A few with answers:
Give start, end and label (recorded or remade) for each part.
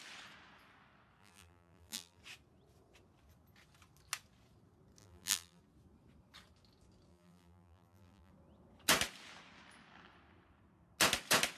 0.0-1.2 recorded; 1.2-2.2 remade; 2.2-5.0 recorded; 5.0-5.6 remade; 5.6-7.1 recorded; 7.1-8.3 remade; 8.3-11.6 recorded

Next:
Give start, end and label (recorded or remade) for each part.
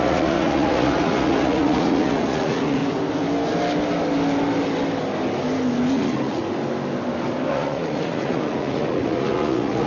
0.0-2.8 remade; 2.8-5.9 recorded; 5.9-6.4 remade; 6.4-7.5 recorded; 7.5-9.9 remade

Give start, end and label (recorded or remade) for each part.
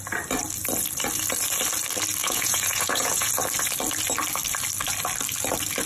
0.0-2.2 recorded; 2.2-3.3 remade; 3.3-5.9 recorded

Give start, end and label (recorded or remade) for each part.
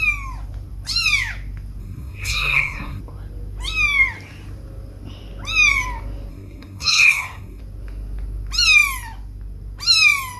0.0-1.8 recorded; 1.8-3.0 remade; 3.0-6.3 recorded; 6.3-7.6 remade; 7.6-10.4 recorded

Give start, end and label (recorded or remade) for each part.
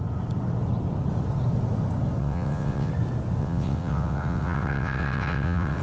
0.0-2.2 recorded; 2.2-2.9 remade; 2.9-3.4 recorded; 3.4-5.8 remade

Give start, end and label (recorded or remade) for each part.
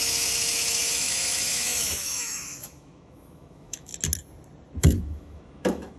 0.0-3.9 remade; 3.9-4.8 recorded; 4.8-6.0 remade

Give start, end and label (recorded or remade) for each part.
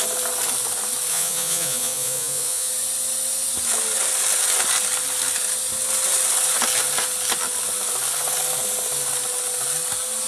0.0-1.1 recorded; 1.1-2.7 remade; 2.7-10.3 recorded